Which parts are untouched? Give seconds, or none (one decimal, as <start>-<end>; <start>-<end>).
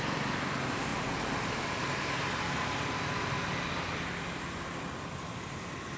0.0-6.0